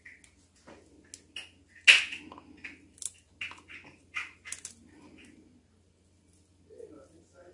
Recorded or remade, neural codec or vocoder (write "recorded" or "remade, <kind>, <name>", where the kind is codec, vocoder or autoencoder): recorded